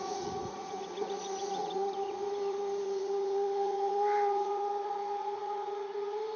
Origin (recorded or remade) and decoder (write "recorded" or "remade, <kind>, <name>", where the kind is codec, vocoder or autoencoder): remade, vocoder, Vocos